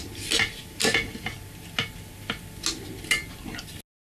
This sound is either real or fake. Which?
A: real